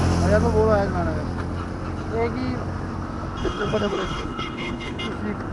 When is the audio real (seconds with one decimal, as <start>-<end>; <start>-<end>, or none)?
0.0-3.4; 5.0-5.5